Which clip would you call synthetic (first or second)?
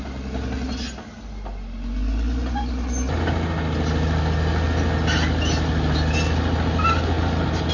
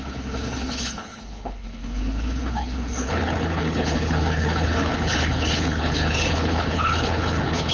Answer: second